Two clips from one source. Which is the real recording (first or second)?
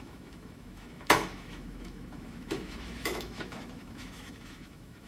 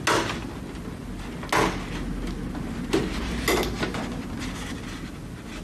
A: second